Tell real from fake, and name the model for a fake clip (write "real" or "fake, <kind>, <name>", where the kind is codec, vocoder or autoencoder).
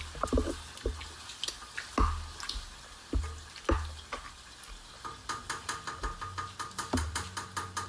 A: real